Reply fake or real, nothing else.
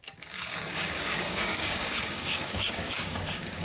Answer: fake